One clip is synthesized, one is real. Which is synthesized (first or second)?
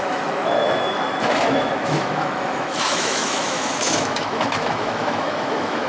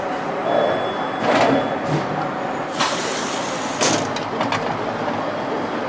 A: first